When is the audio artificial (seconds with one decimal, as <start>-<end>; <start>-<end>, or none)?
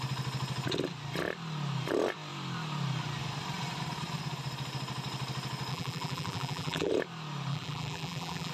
5.7-6.9; 7.5-8.5